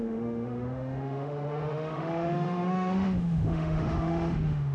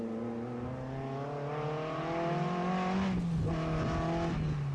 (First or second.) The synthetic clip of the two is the first